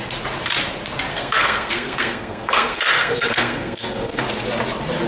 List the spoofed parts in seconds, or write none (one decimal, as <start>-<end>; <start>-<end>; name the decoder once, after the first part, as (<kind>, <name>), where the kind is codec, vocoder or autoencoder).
1.1-4.2 (codec, SNAC)